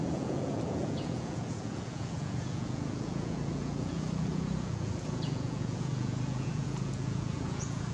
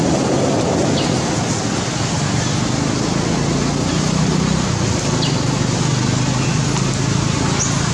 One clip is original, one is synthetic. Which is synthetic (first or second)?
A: first